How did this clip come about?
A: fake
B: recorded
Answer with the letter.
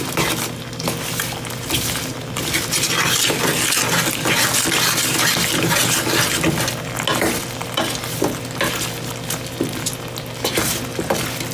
B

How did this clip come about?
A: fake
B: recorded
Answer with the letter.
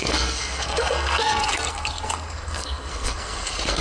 A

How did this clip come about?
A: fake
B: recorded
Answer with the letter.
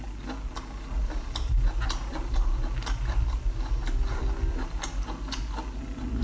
B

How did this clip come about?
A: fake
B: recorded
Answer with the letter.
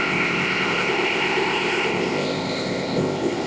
A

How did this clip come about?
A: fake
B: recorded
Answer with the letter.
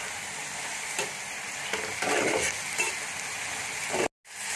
B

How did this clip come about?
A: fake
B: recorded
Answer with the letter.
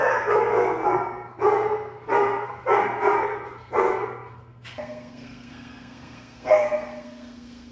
A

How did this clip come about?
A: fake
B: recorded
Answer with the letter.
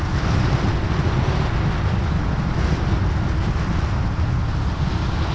B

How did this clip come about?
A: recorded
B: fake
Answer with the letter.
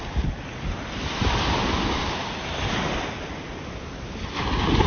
A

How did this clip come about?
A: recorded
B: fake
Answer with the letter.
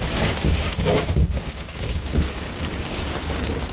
B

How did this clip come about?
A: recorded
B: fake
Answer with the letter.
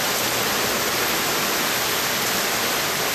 A